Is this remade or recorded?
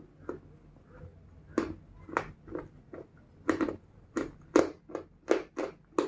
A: recorded